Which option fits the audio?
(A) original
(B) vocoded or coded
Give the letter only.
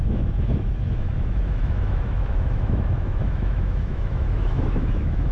B